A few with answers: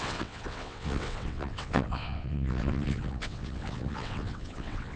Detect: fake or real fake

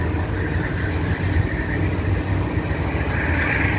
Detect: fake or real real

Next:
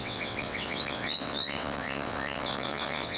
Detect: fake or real fake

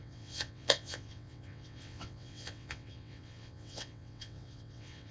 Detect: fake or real fake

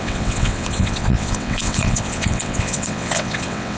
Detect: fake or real fake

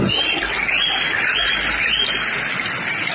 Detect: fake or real real